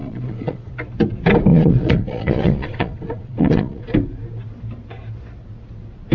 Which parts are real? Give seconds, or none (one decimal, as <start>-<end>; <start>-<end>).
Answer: 0.7-1.5; 3.8-6.1